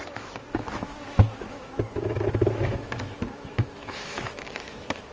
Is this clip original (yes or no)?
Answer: no